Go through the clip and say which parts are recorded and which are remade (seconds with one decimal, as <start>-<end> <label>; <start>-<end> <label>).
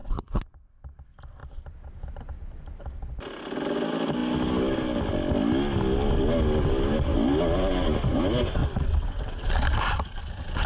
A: 0.0-0.7 remade; 0.7-8.6 recorded; 8.6-9.5 remade; 9.5-10.7 recorded